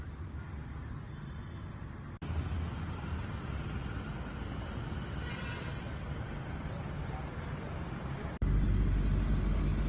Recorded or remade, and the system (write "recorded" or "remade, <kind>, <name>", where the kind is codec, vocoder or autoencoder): recorded